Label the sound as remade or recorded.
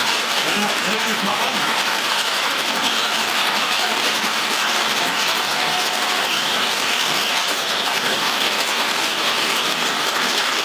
remade